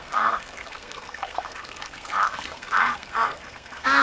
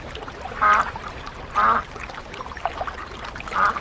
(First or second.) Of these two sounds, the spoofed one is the first